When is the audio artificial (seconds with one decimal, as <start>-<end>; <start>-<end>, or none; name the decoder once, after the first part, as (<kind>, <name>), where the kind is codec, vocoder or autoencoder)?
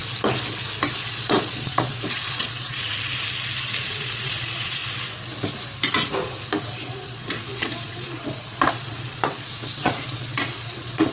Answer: 0.9-2.9 (vocoder, Vocos); 3.8-4.8; 6.6-11.1